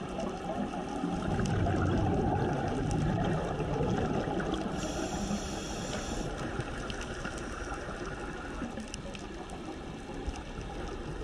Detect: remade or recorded recorded